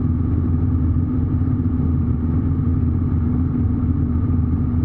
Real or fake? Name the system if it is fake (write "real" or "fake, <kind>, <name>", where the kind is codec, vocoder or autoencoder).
fake, vocoder, BigVGAN v2